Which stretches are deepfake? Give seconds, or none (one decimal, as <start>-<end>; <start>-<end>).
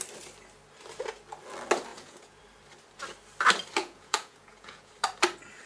1.9-2.4; 3.8-4.9